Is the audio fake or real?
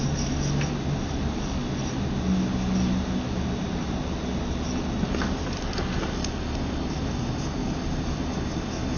real